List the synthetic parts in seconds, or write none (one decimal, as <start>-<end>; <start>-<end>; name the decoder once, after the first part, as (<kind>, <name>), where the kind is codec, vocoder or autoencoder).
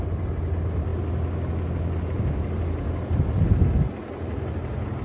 none